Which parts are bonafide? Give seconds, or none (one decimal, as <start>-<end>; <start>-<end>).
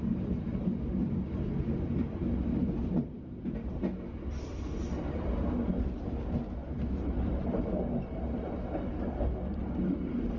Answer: 0.0-6.6; 7.7-10.4